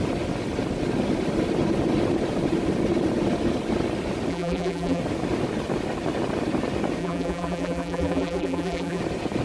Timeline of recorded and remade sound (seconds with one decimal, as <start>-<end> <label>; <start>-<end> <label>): 0.0-4.3 recorded; 4.3-5.0 remade; 5.0-7.0 recorded; 7.0-9.0 remade; 9.0-9.4 recorded